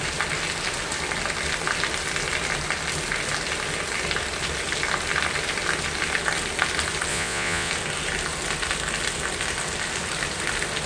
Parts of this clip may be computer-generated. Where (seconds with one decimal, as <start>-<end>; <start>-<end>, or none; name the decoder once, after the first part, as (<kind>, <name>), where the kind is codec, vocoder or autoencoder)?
7.1-7.7 (vocoder, Vocos)